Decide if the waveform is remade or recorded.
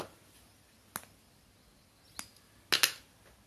recorded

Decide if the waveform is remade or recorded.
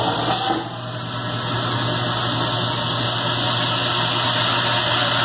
recorded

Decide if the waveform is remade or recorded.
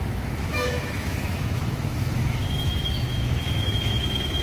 remade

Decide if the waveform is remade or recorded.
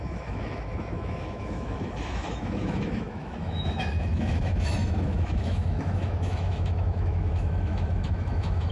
remade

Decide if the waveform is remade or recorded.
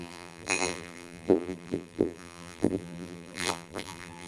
remade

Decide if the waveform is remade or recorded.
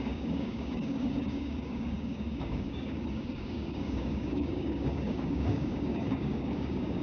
remade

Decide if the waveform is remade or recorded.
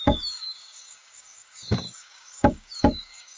remade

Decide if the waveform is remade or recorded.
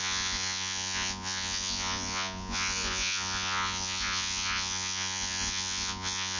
remade